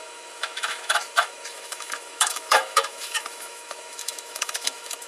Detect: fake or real fake